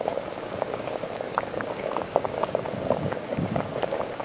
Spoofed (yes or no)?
yes